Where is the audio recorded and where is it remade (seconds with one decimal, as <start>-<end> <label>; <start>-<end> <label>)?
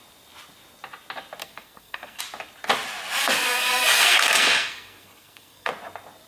0.0-1.4 recorded; 1.4-2.2 remade; 2.2-3.2 recorded; 3.2-5.7 remade; 5.7-6.3 recorded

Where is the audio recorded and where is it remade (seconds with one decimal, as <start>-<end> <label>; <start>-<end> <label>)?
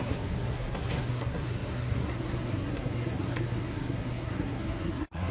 0.0-5.3 remade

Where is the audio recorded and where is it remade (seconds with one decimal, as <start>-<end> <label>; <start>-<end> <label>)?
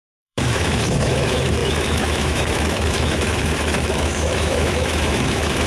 0.0-5.7 remade